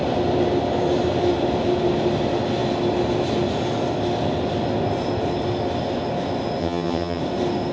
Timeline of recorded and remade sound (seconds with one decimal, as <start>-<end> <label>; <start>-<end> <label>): 0.0-6.6 recorded; 6.6-7.2 remade; 7.2-7.7 recorded

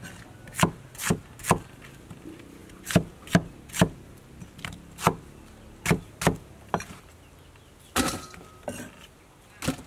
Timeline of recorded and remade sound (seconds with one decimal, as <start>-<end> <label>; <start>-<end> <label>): 0.0-9.9 recorded